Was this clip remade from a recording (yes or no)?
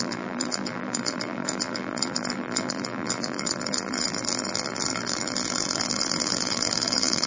yes